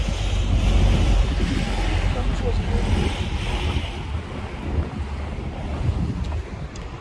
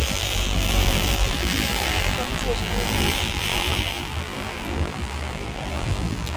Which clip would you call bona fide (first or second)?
first